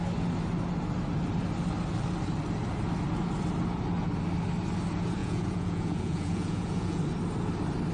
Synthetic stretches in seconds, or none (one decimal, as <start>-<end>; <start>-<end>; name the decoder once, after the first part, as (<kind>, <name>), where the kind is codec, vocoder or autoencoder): 5.2-7.0 (vocoder, Vocos)